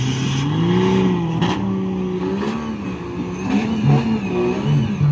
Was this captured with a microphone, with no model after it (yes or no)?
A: yes